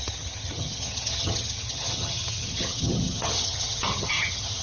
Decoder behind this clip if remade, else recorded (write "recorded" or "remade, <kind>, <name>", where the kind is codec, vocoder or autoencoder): remade, vocoder, HiFi-GAN